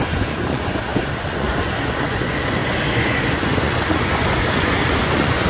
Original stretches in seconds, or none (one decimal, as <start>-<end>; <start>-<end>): none